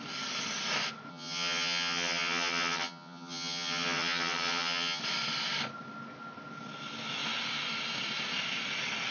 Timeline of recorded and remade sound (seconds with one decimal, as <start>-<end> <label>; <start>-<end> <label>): 0.0-1.1 recorded; 1.1-5.0 remade; 5.0-9.1 recorded